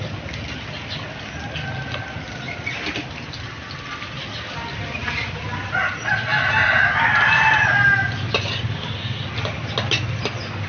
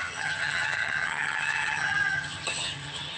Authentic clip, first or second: first